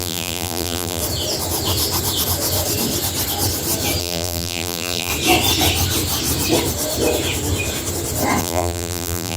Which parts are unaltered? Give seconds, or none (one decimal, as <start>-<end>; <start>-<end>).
1.0-4.0; 5.1-8.4